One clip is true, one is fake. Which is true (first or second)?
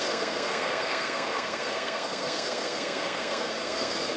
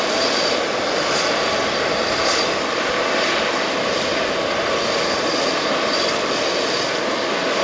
second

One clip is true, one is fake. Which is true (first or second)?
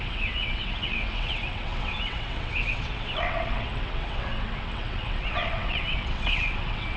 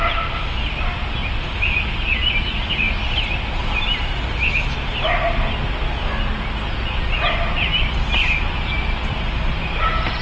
second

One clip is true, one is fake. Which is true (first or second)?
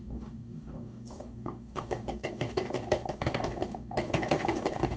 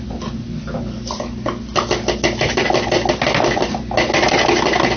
second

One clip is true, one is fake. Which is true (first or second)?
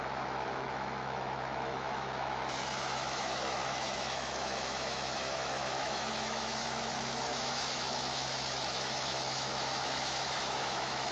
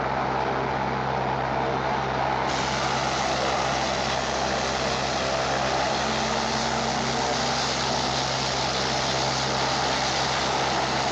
second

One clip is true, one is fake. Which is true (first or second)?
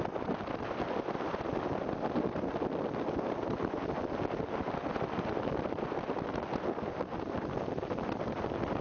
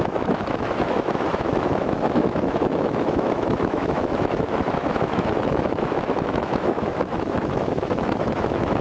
first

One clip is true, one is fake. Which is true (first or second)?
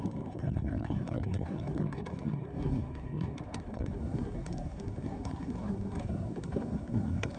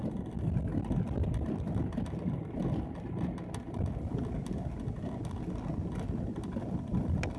second